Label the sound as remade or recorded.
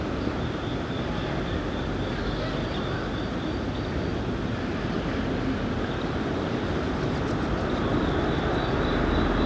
recorded